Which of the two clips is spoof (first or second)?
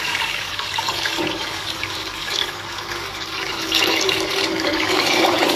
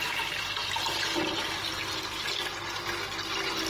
first